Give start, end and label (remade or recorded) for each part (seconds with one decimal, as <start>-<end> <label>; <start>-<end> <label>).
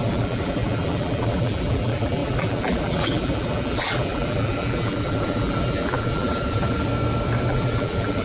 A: 0.0-6.9 remade; 6.9-7.5 recorded; 7.5-8.2 remade